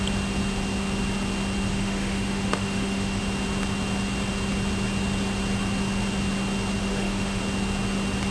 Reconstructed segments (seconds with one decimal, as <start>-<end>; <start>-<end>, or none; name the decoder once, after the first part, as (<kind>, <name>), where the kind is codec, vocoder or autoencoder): 1.7-3.2 (autoencoder, DAC-VAE); 6.8-7.4